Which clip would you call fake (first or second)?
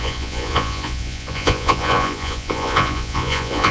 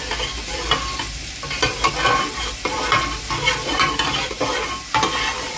first